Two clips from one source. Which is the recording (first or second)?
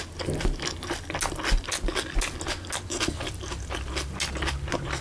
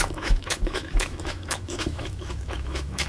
first